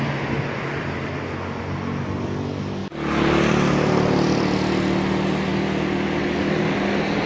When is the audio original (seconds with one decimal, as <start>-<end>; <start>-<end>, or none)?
0.0-7.3